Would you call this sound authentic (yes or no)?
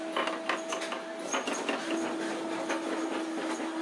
yes